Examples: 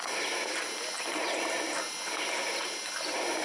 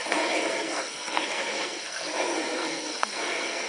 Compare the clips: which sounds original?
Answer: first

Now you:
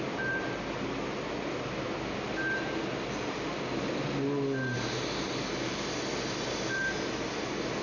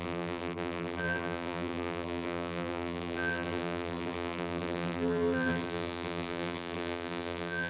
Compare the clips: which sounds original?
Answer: first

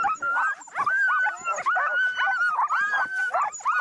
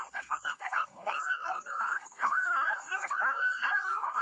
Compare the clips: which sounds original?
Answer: first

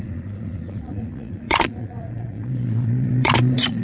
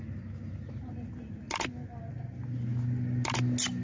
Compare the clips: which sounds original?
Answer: second